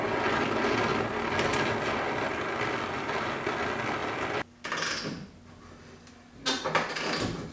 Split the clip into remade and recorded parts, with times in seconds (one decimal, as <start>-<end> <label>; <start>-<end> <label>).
0.0-7.5 recorded